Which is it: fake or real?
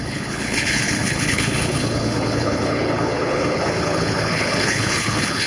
fake